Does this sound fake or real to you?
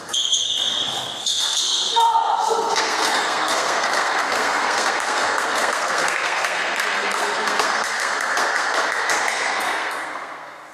fake